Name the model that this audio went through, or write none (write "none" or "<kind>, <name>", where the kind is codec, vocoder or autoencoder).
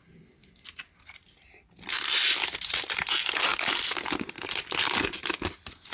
none